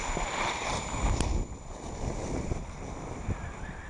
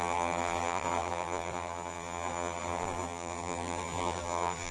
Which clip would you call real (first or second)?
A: first